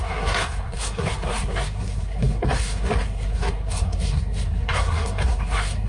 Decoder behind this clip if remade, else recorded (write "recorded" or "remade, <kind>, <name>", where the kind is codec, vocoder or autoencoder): remade, codec, SNAC